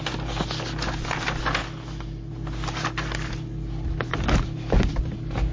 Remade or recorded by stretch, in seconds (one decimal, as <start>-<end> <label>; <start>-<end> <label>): 0.0-5.5 recorded